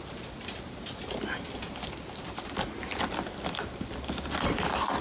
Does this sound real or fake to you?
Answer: real